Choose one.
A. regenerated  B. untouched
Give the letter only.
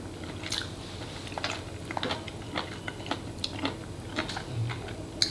B